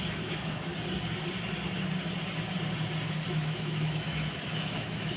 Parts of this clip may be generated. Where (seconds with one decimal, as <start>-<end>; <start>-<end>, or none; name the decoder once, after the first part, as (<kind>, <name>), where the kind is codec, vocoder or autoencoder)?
0.0-0.7 (autoencoder, DAC-VAE); 3.3-5.2

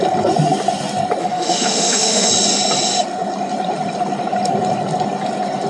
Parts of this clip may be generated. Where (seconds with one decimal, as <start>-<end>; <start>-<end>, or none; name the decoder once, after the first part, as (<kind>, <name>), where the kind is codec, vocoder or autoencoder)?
1.2-2.3 (autoencoder, DAC-VAE)

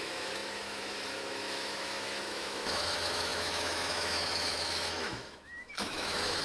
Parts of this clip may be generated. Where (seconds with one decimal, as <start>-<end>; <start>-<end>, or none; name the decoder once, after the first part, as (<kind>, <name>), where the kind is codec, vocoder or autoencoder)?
0.0-6.4 (autoencoder, DAC-VAE)